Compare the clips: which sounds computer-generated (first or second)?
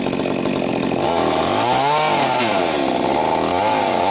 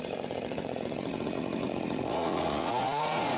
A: second